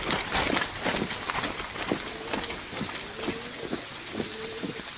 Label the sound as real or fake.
real